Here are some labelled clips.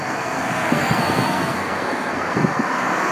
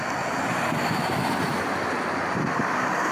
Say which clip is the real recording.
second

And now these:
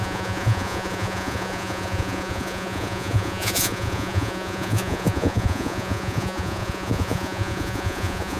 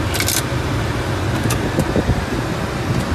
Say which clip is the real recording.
second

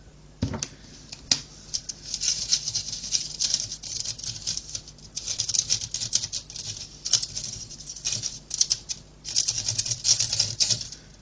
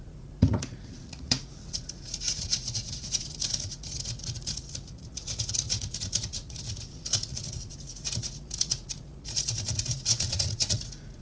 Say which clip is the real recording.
first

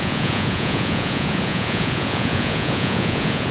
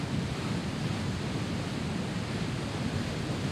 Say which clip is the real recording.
second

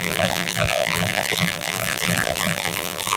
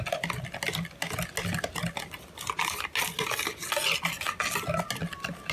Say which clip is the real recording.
second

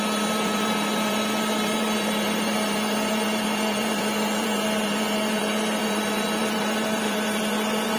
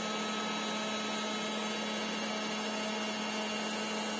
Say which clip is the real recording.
second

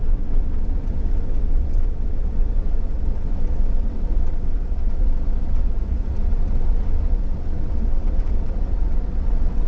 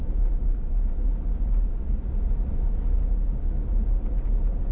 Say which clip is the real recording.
second